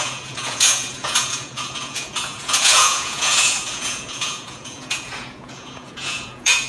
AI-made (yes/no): yes